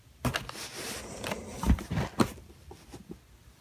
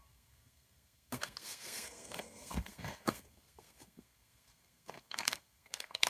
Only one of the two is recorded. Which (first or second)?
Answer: first